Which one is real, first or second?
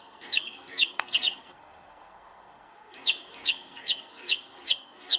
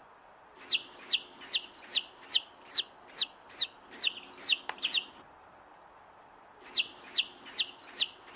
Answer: second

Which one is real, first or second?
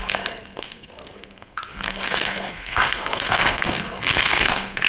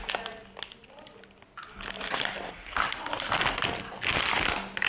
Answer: second